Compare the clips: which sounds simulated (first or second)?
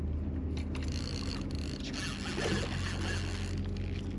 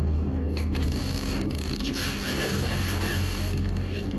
second